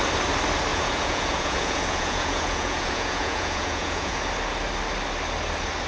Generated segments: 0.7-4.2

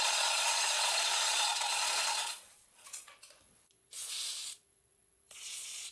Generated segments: 0.0-5.9

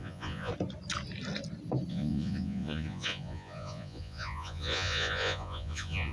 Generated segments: 0.0-0.5; 1.9-6.1

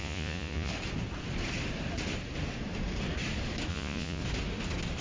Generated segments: 0.0-0.7; 3.7-4.2